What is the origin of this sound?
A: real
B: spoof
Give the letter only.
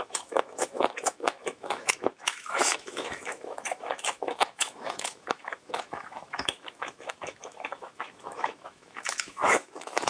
B